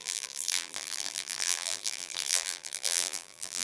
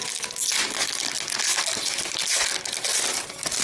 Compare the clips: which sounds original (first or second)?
second